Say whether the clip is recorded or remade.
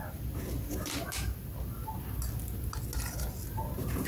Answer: recorded